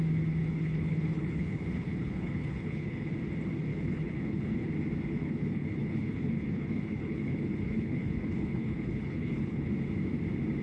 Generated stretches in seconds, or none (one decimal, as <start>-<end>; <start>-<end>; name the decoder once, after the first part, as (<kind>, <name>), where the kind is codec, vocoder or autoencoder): 0.4-3.1 (codec, HILCodec); 3.7-4.7; 5.2-9.7